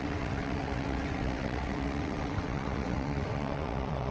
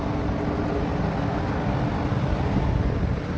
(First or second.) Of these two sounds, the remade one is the first